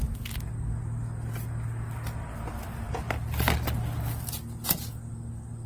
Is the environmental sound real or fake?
real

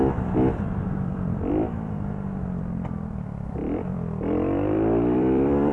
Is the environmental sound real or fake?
fake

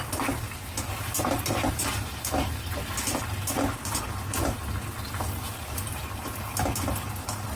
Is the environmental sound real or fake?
real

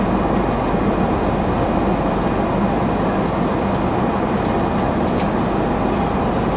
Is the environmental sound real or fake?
real